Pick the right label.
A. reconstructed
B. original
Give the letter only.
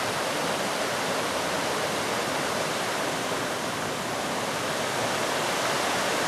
B